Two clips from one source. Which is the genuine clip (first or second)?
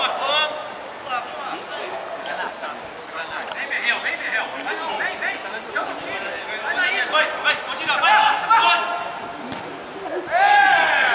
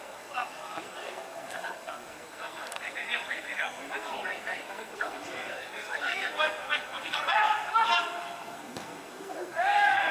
first